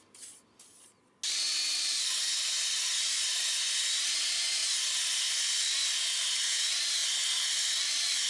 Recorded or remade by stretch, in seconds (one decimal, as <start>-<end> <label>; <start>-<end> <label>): 0.0-8.3 recorded